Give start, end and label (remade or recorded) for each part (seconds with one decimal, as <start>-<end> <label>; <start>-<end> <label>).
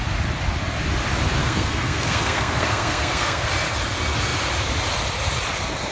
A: 0.0-1.4 recorded; 1.4-3.5 remade; 3.5-5.9 recorded